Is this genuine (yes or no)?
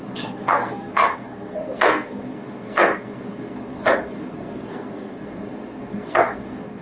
no